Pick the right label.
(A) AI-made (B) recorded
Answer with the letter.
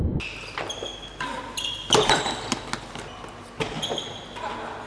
B